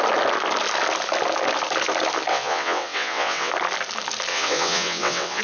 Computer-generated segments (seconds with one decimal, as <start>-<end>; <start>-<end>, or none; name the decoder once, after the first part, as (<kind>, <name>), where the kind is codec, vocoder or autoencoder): 2.3-3.5 (vocoder, WaveNeXt); 4.3-5.4